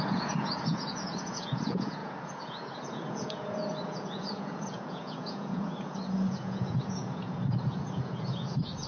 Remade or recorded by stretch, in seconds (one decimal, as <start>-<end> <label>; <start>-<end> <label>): 0.0-8.9 remade